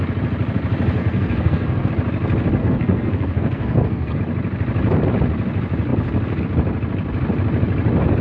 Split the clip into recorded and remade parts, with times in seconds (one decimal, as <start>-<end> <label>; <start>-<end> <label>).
0.0-1.0 recorded; 1.0-1.9 remade; 1.9-2.6 recorded; 2.6-4.2 remade; 4.2-8.2 recorded